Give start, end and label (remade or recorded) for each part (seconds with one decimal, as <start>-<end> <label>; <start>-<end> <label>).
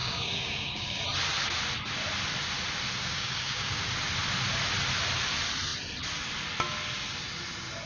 0.0-1.0 remade; 1.0-3.0 recorded; 3.0-3.8 remade; 3.8-7.9 recorded